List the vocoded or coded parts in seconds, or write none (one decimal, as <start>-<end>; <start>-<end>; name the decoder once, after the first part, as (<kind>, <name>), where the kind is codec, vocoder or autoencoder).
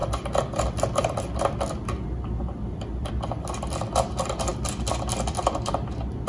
none